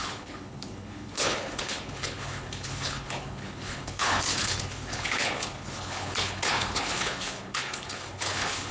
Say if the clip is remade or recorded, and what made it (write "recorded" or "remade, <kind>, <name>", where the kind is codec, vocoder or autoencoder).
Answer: remade, codec, HILCodec